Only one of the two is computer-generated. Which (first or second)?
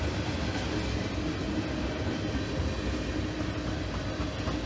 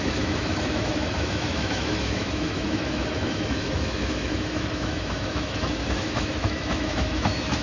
second